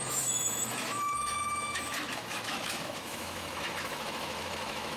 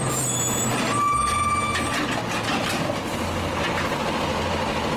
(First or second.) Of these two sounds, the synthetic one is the first